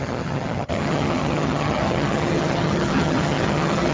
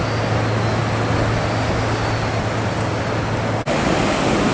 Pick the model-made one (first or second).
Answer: first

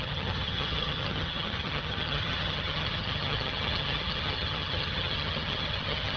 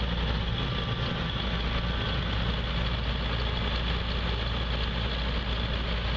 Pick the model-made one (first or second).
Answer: first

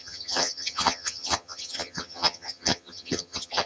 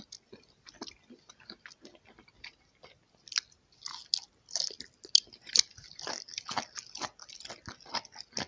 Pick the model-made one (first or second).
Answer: first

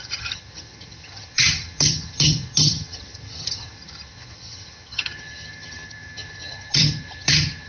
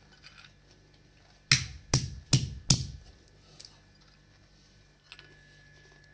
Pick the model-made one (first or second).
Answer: first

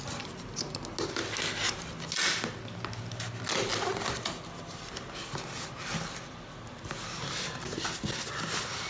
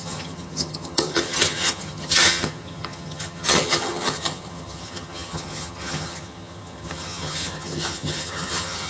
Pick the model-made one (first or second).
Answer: second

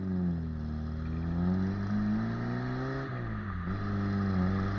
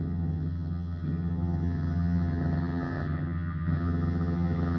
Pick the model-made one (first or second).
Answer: second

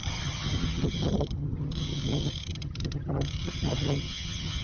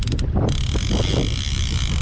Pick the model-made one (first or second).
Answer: first